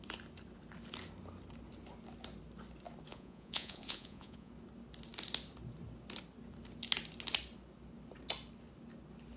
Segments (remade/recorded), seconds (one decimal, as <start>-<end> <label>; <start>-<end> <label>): 0.0-3.1 recorded; 3.1-4.5 remade; 4.5-9.4 recorded